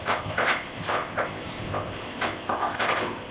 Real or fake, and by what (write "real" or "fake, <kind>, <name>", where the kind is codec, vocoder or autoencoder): fake, codec, ZipCodec